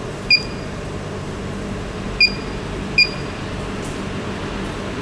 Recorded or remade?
recorded